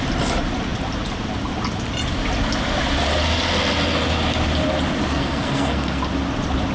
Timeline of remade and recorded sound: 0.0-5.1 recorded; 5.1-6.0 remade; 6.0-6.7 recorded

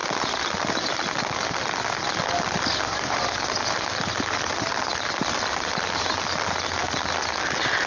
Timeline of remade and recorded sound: 0.0-7.9 recorded

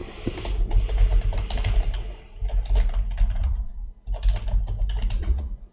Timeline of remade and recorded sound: 0.0-3.4 recorded; 3.4-4.0 remade; 4.0-5.2 recorded; 5.2-5.7 remade

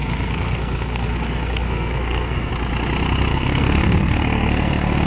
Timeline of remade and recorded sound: 0.0-2.5 remade; 2.5-3.3 recorded; 3.3-5.1 remade

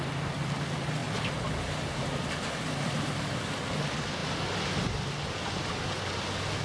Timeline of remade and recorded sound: 0.0-6.6 recorded